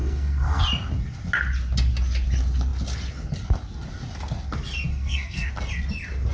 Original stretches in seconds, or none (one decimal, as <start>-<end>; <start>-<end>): 0.6-4.9; 5.5-6.3